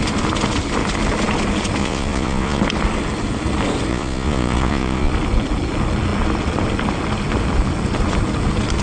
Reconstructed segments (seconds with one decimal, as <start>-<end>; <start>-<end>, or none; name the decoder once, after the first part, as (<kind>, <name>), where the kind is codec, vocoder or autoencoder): 1.8-2.6 (vocoder, Vocos); 3.9-5.1